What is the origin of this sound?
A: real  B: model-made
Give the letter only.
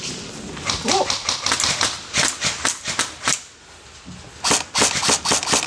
A